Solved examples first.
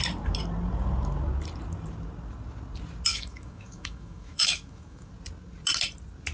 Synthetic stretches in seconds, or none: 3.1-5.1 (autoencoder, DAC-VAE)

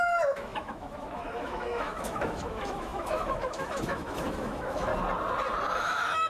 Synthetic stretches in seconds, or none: 0.0-4.9 (autoencoder, DAC-VAE); 5.8-6.3

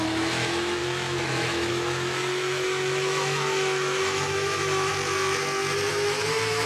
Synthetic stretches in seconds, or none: 0.0-4.9 (autoencoder, DAC-VAE); 5.9-6.7

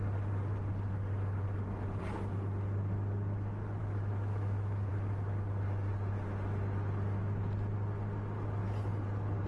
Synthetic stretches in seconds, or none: 3.8-4.9 (autoencoder, DAC-VAE)

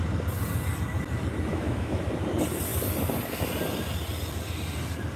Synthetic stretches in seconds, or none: 1.5-2.0 (autoencoder, DAC-VAE)

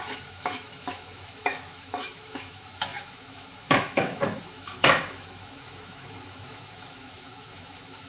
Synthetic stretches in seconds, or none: 0.0-8.1 (autoencoder, DAC-VAE)

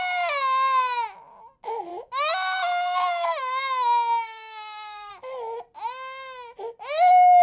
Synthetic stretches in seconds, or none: 1.9-5.1 (autoencoder, DAC-VAE)

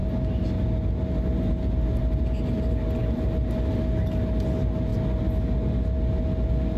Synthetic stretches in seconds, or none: none